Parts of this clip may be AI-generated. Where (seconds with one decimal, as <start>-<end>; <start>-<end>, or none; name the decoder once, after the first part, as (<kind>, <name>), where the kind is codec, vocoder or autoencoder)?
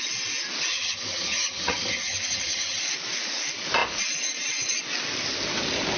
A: 0.7-2.8 (vocoder, HiFi-GAN)